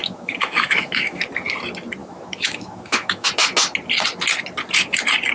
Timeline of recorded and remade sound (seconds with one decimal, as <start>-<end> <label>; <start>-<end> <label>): 0.0-1.2 remade; 1.2-2.0 recorded; 2.0-3.3 remade; 3.3-5.3 recorded